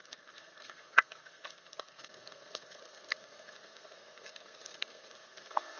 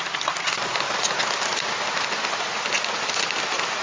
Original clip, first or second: second